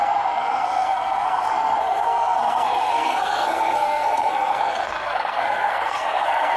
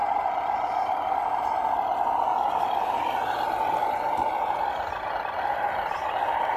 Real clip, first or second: second